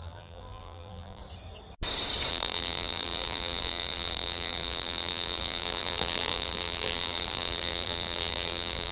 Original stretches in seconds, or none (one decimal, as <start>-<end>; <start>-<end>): 1.2-2.3